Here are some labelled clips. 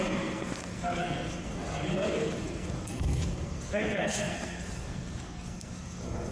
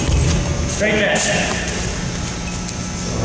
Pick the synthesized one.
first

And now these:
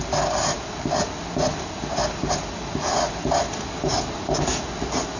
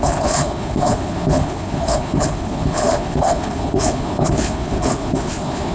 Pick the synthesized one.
second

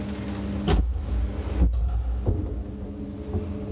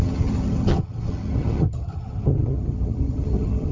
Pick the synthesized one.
second